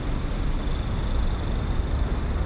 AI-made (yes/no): no